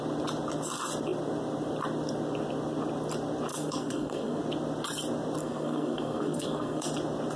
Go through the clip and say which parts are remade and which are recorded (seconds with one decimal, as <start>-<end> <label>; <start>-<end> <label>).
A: 0.0-3.5 recorded; 3.5-4.4 remade; 4.4-5.4 recorded; 5.4-6.9 remade; 6.9-7.4 recorded